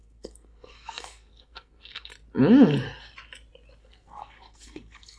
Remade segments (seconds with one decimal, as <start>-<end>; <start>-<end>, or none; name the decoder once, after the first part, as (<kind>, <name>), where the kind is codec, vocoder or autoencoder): 0.0-2.1 (codec, SNAC); 3.8-5.2